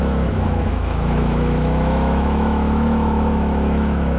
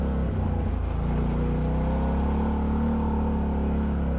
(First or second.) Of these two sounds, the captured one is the second